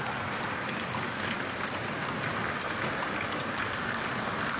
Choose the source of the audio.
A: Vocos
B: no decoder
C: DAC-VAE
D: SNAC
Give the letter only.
B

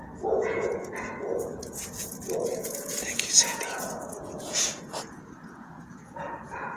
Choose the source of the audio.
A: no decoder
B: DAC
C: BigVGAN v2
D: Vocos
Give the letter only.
D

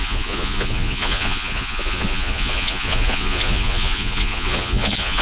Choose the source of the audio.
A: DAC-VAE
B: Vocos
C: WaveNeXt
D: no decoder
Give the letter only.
B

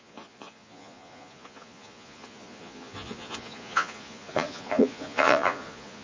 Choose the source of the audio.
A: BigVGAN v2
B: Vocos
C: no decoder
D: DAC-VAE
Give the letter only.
B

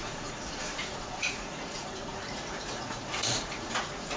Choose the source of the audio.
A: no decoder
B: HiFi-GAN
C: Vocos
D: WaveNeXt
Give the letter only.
C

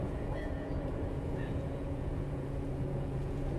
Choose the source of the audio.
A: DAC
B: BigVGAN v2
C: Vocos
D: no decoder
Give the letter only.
C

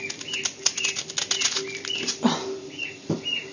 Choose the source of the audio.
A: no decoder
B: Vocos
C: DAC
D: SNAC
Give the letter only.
A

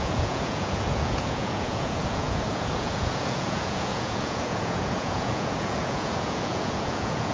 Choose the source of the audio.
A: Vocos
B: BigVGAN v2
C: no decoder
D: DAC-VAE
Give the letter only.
A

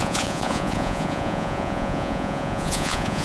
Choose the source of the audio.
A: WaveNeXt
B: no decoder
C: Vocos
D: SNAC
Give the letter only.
C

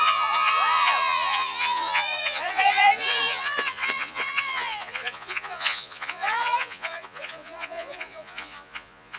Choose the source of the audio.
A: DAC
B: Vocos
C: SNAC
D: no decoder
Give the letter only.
B